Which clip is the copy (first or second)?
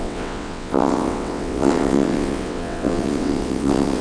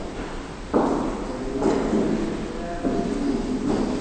first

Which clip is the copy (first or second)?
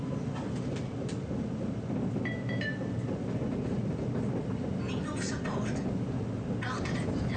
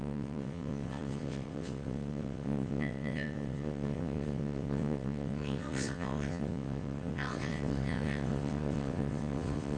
second